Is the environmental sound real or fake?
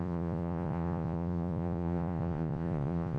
fake